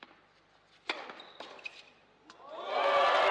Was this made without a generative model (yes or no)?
yes